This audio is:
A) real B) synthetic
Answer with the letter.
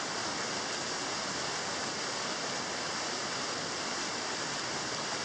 A